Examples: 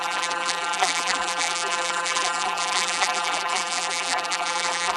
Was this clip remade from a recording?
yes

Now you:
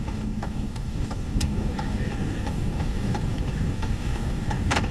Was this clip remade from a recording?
yes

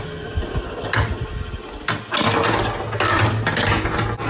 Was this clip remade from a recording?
no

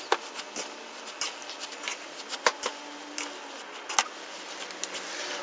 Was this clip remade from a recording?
no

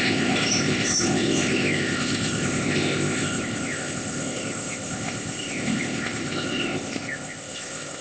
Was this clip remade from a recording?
yes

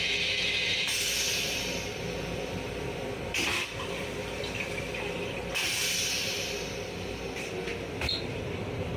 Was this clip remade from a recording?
yes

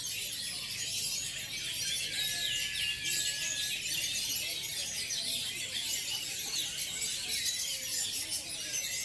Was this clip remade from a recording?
no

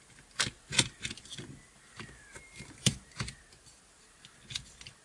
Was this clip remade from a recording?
no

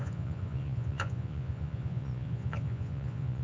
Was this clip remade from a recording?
yes